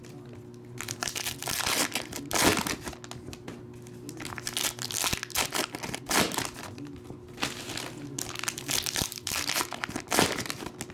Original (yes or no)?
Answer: yes